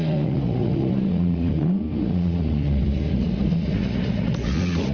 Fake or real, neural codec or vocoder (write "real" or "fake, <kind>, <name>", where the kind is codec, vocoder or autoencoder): fake, vocoder, Vocos